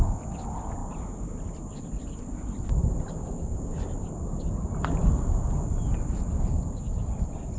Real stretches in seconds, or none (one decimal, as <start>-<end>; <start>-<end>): 0.0-7.6